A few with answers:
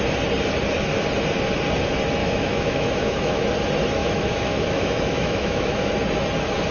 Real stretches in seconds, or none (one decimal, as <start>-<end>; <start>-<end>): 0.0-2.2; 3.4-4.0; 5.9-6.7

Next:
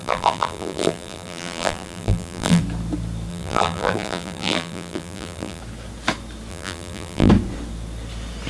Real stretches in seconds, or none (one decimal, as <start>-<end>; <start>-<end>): 2.6-3.3; 5.6-6.5; 7.3-8.5

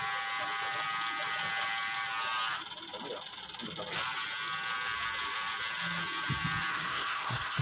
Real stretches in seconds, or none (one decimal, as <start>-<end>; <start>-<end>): 0.0-6.7

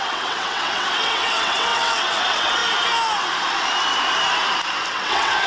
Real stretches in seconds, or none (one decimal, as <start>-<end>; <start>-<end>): 2.6-4.9